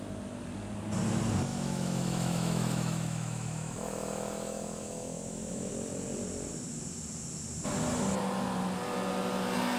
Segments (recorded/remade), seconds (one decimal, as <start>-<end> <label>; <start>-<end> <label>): 0.0-1.5 recorded; 1.5-5.7 remade; 5.7-9.8 recorded